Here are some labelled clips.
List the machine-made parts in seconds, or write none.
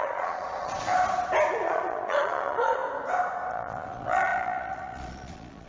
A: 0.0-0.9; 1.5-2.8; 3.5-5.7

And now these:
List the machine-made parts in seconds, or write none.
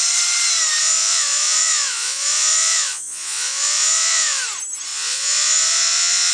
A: 0.8-4.4; 4.9-6.3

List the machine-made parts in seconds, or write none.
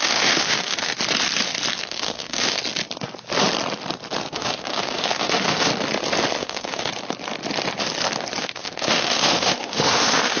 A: 0.0-0.9; 1.8-2.6; 4.3-5.7; 6.4-6.9; 8.4-10.4